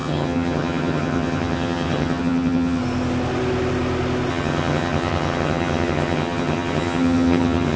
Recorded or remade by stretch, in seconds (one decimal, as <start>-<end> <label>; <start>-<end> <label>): 0.0-2.8 remade; 2.8-4.3 recorded; 4.3-7.8 remade